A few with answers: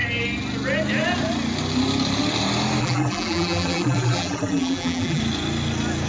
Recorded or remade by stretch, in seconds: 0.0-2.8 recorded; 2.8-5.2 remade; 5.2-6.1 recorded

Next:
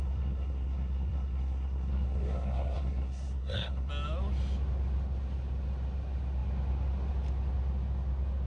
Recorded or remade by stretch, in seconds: 0.0-3.9 remade; 3.9-8.5 recorded

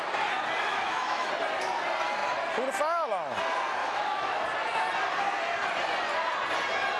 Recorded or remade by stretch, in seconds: 0.0-0.7 recorded; 0.7-1.3 remade; 1.3-3.8 recorded; 3.8-4.4 remade; 4.4-7.0 recorded